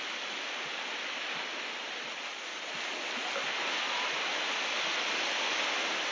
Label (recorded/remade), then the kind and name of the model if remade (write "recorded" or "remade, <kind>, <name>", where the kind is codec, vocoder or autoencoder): recorded